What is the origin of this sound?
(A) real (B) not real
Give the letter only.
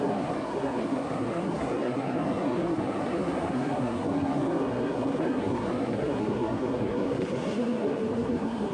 B